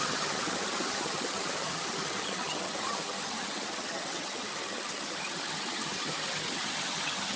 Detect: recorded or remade remade